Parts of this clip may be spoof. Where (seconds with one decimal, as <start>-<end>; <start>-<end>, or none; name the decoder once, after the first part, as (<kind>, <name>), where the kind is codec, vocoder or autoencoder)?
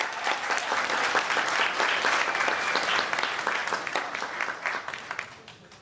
none